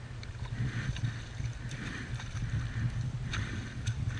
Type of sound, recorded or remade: recorded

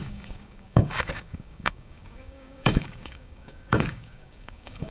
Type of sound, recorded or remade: remade